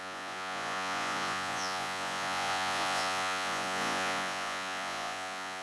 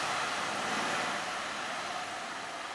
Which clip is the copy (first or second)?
first